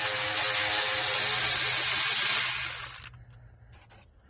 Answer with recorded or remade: recorded